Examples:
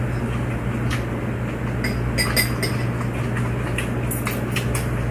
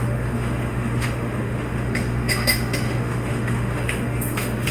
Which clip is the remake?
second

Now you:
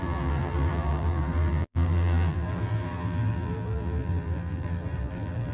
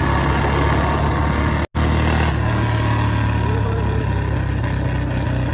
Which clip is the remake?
first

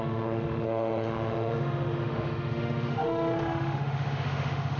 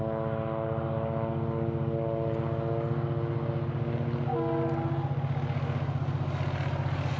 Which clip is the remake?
first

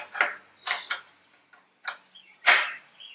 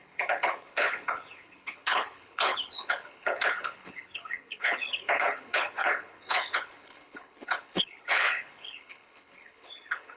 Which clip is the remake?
second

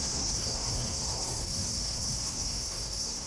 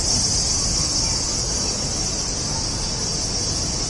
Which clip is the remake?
first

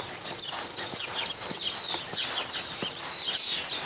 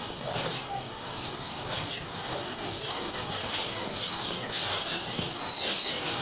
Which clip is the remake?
second